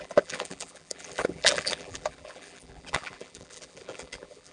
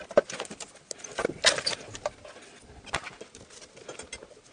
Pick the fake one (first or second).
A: first